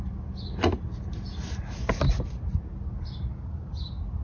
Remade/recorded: recorded